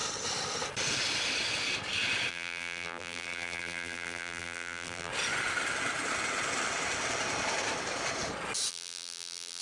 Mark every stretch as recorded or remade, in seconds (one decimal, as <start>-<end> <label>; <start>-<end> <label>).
0.0-2.3 recorded; 2.3-5.1 remade; 5.1-8.7 recorded; 8.7-9.6 remade